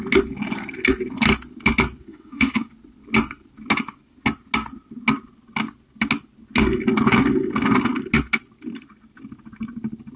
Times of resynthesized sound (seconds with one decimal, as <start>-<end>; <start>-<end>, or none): 2.1-2.7